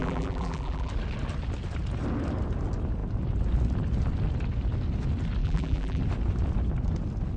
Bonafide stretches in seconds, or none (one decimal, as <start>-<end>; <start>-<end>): 0.9-5.4; 6.0-7.4

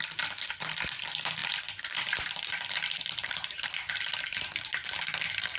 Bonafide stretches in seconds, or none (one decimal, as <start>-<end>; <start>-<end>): 0.0-1.4; 4.2-5.6

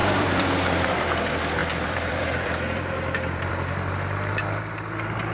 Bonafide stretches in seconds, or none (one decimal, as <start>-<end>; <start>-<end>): 0.9-1.6; 4.6-5.3

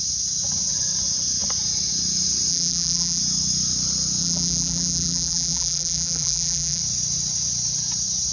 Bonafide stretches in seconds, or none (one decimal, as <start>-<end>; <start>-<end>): 0.0-2.5; 3.2-4.2; 6.8-8.3

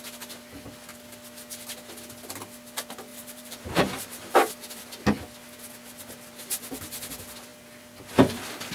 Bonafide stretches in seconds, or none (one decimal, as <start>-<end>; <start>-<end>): 0.0-3.1; 4.5-8.7

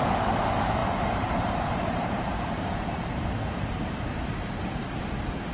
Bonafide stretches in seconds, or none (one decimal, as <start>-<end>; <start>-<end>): 0.0-0.8; 4.1-5.5

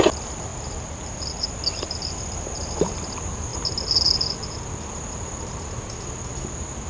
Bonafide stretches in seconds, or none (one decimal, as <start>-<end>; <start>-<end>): 0.0-6.9

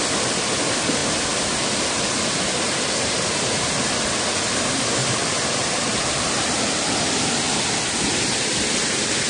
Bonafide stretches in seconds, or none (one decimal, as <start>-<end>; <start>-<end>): 0.0-5.0; 8.7-9.3